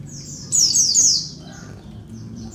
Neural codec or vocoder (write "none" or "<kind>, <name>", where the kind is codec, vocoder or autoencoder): vocoder, BigVGAN v2